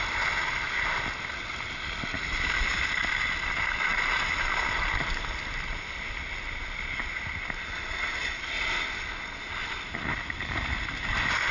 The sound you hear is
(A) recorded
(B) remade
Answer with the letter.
A